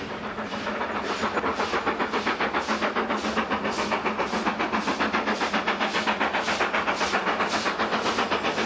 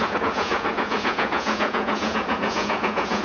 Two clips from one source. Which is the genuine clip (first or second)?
first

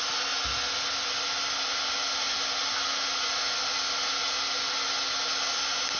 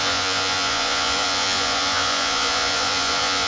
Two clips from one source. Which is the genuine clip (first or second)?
first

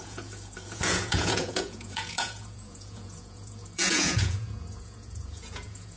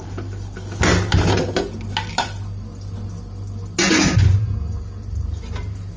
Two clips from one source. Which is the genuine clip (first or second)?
second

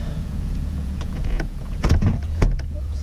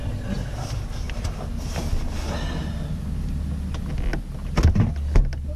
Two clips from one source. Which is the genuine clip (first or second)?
second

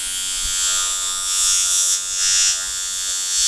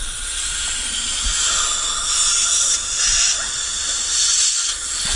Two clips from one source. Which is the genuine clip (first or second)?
second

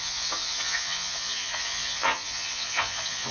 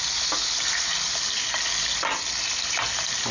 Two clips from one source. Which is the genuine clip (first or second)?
second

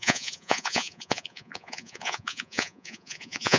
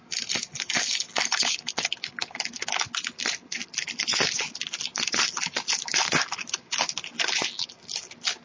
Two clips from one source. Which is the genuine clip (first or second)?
second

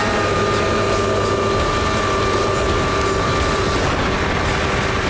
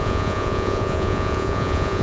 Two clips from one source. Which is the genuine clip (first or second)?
first